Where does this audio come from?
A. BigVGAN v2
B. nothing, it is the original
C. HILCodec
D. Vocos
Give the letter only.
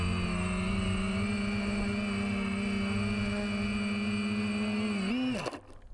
B